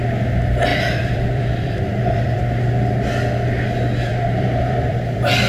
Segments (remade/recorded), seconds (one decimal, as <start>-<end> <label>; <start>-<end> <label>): 0.0-0.7 recorded; 0.7-2.4 remade; 2.4-4.1 recorded; 4.1-5.5 remade